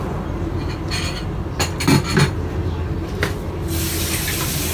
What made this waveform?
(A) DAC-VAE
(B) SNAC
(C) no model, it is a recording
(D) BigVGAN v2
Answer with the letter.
C